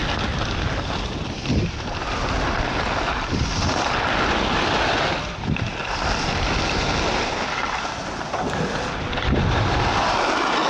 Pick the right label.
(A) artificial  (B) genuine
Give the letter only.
B